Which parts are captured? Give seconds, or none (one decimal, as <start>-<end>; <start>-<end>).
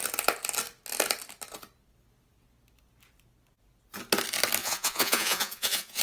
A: 0.0-4.6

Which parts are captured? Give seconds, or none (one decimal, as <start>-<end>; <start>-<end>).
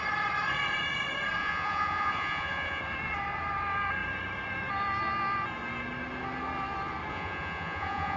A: 0.0-1.4; 2.8-7.1